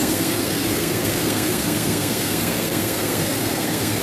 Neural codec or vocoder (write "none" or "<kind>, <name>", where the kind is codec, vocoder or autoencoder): codec, SNAC